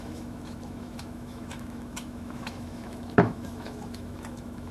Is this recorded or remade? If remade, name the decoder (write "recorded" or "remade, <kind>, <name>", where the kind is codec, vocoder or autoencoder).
remade, autoencoder, DAC-VAE